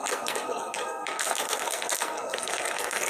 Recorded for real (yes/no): no